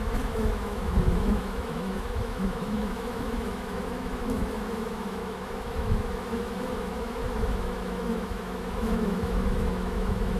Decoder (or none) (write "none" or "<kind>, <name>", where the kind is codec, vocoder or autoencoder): autoencoder, DAC-VAE